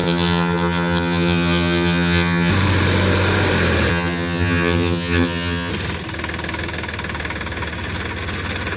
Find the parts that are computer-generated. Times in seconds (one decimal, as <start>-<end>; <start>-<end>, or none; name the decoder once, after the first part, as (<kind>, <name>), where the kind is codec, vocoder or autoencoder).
0.0-2.5 (vocoder, HiFi-GAN); 3.9-5.7